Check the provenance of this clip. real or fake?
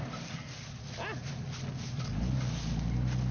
real